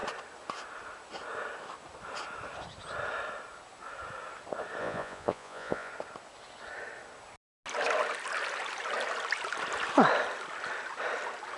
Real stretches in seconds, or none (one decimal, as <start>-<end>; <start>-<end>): 0.0-4.8; 5.9-11.6